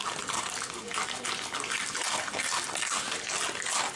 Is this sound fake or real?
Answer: real